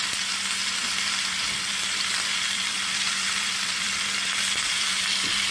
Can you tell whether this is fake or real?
fake